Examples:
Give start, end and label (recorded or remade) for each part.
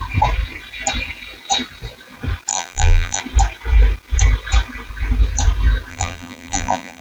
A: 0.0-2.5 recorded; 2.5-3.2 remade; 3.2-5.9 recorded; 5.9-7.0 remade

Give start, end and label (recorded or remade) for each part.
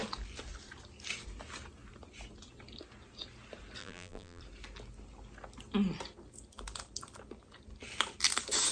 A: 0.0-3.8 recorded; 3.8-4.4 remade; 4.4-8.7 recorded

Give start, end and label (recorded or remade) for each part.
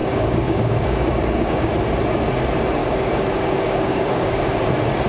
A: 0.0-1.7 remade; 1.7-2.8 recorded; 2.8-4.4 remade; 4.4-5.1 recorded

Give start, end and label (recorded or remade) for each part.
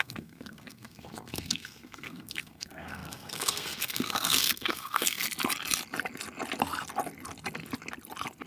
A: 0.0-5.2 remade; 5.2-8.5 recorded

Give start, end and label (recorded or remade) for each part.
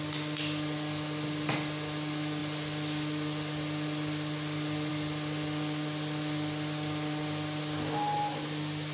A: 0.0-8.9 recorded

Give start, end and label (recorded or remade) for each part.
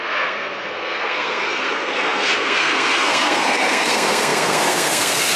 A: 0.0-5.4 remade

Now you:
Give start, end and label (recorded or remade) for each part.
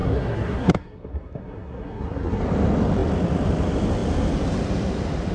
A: 0.0-2.4 remade; 2.4-5.3 recorded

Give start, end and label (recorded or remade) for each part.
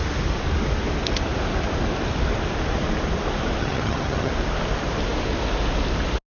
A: 0.0-3.6 recorded; 3.6-4.3 remade; 4.3-6.3 recorded